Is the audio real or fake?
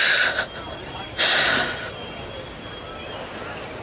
real